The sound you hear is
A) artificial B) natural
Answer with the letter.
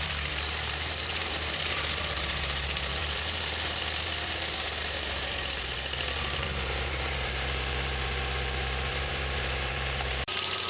A